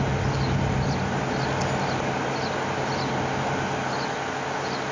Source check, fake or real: real